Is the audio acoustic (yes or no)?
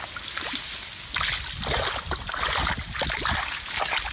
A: yes